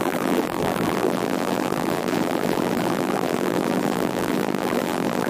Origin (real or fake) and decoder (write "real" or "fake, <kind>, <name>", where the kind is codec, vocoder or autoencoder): fake, vocoder, BigVGAN v2